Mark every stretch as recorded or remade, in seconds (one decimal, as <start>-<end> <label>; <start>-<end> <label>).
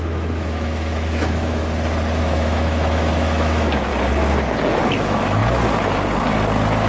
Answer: 0.0-1.6 remade; 1.6-2.2 recorded; 2.2-3.9 remade; 3.9-4.9 recorded; 4.9-5.4 remade; 5.4-6.9 recorded